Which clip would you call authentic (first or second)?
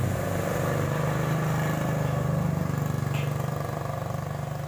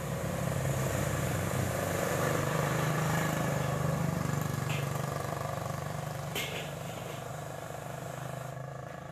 first